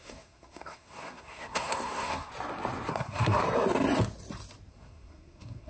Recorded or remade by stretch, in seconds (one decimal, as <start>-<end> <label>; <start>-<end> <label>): 0.0-2.3 remade; 2.3-2.9 recorded; 2.9-3.4 remade; 3.4-4.7 recorded; 4.7-5.7 remade

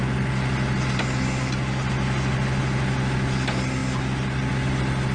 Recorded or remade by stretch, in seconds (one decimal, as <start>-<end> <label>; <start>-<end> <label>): 0.0-5.1 recorded

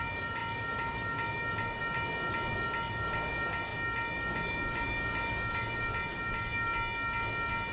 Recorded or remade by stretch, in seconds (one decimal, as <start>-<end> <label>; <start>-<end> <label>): 0.0-7.7 recorded

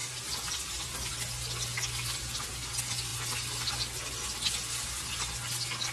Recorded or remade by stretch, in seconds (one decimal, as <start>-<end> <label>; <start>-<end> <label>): 0.0-1.1 remade; 1.1-5.9 recorded

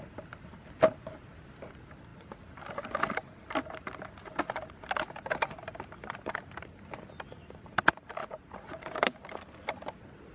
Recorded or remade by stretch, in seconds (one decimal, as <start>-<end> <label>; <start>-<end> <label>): 0.0-8.2 recorded; 8.2-8.9 remade; 8.9-10.3 recorded